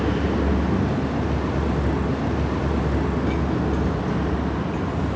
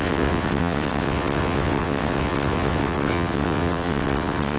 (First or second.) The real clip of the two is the first